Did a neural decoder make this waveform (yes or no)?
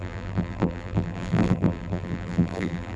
yes